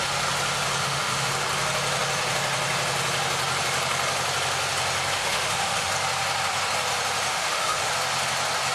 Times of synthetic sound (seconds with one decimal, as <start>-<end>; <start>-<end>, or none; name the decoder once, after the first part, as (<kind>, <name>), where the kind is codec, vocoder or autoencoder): 0.8-1.3 (autoencoder, DAC-VAE); 5.2-5.9; 7.3-7.9